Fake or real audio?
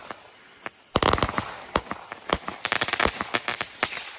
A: real